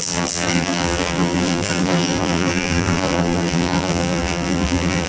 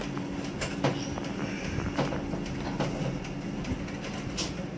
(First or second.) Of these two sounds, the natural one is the second